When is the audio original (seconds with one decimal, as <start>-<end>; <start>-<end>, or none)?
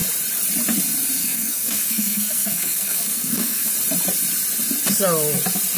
0.0-1.2; 3.7-5.8